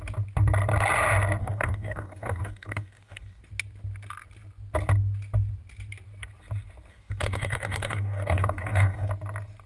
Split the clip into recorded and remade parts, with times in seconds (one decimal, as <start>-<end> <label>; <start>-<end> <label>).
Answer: 0.0-1.4 recorded; 1.4-3.4 remade; 3.4-6.9 recorded; 6.9-9.1 remade; 9.1-9.7 recorded